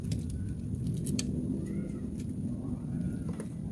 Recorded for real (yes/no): no